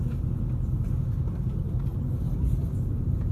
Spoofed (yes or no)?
yes